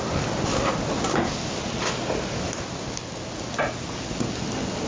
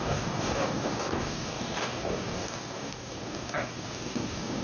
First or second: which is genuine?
first